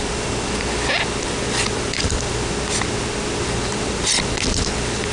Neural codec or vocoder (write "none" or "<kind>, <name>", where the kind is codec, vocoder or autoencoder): none